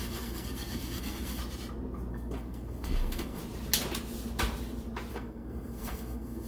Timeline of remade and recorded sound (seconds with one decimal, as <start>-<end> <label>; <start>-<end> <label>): 0.0-1.4 remade; 1.4-2.1 recorded; 2.1-3.4 remade; 3.4-5.1 recorded; 5.1-6.5 remade